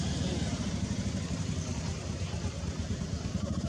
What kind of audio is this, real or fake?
fake